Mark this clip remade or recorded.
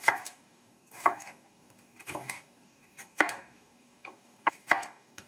remade